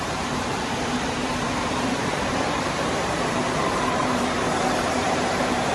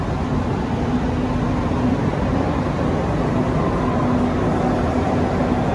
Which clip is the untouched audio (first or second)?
second